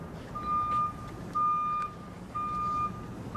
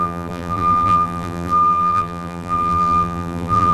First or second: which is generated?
second